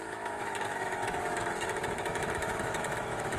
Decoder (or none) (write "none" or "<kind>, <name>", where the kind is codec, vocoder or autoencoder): autoencoder, DAC-VAE